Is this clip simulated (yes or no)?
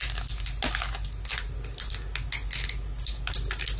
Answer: no